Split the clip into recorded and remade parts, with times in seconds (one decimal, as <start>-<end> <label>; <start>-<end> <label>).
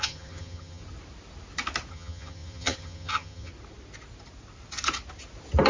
0.0-0.8 remade; 0.8-1.9 recorded; 1.9-3.5 remade; 3.5-5.7 recorded